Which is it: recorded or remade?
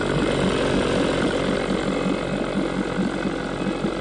recorded